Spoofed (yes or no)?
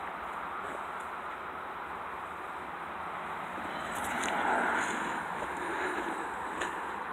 no